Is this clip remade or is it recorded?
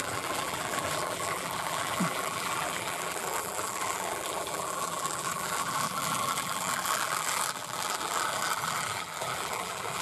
remade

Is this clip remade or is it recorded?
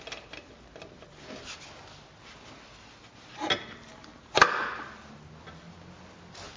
recorded